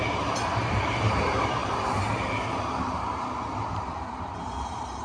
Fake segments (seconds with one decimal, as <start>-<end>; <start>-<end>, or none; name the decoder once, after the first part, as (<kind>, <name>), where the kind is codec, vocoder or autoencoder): 0.0-5.0 (vocoder, BigVGAN v2)